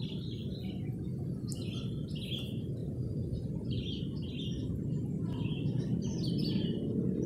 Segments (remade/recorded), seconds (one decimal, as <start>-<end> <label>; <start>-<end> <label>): 0.0-2.8 recorded; 2.8-4.0 remade; 4.0-5.5 recorded; 5.5-6.3 remade; 6.3-7.3 recorded